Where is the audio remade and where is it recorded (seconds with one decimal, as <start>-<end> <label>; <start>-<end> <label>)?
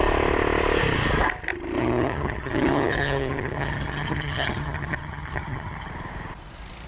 0.0-1.8 recorded; 1.8-5.9 remade; 5.9-6.9 recorded